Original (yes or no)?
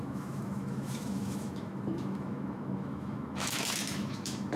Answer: no